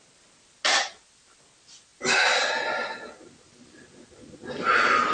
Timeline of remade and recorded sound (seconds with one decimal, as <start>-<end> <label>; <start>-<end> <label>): 0.0-5.1 recorded